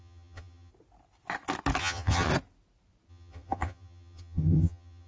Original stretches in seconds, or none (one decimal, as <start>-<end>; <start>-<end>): 0.7-1.8; 2.3-3.1